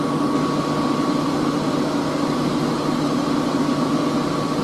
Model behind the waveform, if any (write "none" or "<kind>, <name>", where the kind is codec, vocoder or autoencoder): none